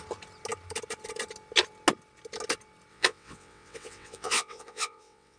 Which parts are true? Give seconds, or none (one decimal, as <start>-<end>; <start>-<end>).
0.0-2.9